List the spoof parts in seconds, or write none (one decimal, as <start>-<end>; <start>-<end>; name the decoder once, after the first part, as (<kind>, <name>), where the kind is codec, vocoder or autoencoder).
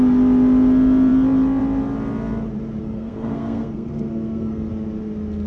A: 2.8-4.7 (codec, SNAC)